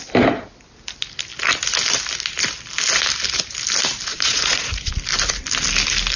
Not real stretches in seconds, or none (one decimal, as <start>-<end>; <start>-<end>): 4.1-4.9